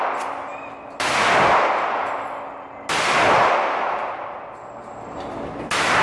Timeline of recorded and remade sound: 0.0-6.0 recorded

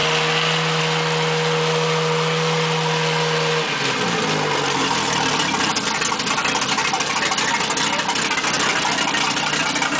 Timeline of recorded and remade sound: 0.0-10.0 recorded

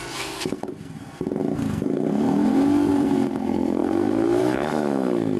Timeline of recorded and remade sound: 0.0-5.4 remade

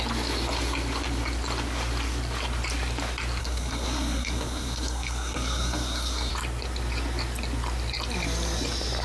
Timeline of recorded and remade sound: 0.0-3.4 recorded; 3.4-6.3 remade; 6.3-9.0 recorded

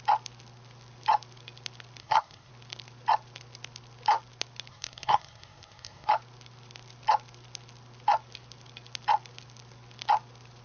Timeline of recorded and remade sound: 0.0-2.0 recorded; 2.0-2.5 remade; 2.5-4.7 recorded; 4.7-6.1 remade; 6.1-10.6 recorded